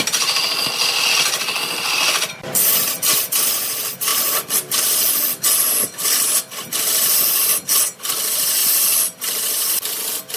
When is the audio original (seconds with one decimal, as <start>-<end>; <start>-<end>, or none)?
0.0-10.4